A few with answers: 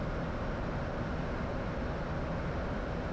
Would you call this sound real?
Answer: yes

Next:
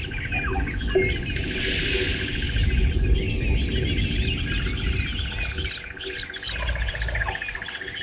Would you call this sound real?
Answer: yes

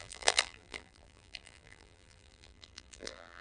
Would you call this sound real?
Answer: no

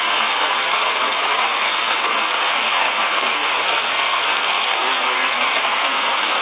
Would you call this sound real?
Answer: no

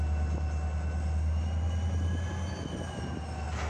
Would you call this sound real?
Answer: yes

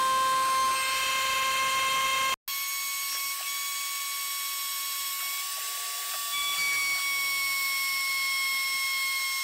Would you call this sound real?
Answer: yes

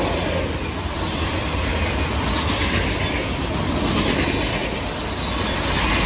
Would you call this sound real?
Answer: yes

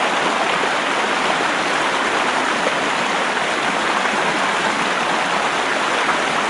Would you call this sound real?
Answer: yes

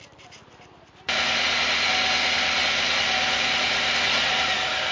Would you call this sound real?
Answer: yes